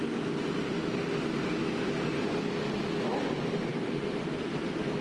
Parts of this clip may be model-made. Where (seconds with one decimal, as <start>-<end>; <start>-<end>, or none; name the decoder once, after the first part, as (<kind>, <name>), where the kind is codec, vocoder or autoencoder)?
none